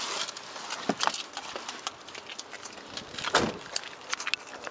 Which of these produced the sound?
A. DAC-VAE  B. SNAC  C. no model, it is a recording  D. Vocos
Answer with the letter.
C